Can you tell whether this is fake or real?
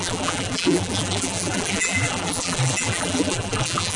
fake